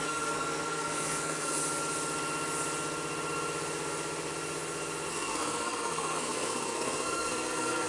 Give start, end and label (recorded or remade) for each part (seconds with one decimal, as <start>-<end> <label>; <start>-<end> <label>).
0.0-1.6 remade; 1.6-5.1 recorded; 5.1-7.9 remade